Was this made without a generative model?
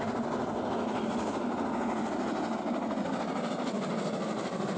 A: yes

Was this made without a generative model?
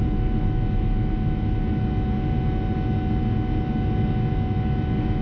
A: yes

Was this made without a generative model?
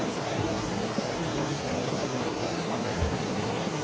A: no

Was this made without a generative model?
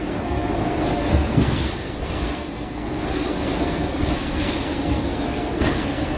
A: no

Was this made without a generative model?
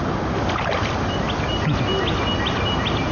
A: yes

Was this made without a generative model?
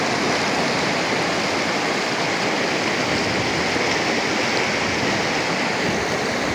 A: yes